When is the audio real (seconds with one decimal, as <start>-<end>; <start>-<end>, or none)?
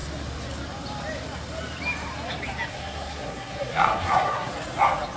0.0-2.7; 4.5-5.2